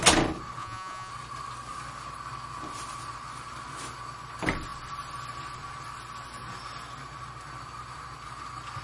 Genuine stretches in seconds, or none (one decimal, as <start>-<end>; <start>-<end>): 0.0-0.6; 1.1-8.8